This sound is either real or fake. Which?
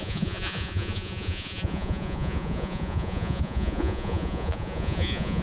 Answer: fake